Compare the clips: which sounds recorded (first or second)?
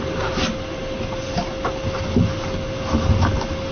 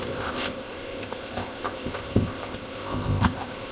first